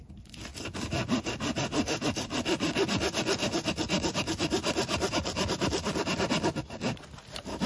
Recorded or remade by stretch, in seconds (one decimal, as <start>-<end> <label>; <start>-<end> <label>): 0.0-7.7 recorded